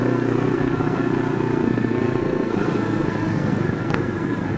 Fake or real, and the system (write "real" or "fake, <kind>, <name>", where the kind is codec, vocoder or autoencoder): fake, codec, SNAC